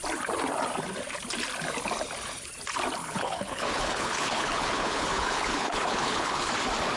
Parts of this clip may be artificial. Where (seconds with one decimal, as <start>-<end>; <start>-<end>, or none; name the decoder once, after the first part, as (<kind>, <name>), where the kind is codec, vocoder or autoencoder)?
3.0-6.5 (codec, HILCodec)